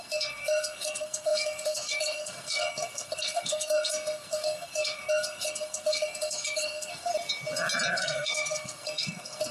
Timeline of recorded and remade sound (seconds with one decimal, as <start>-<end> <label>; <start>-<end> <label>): 0.0-7.1 remade; 7.1-7.9 recorded; 7.9-9.5 remade